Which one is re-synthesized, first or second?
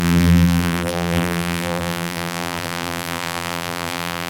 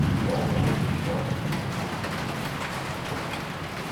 first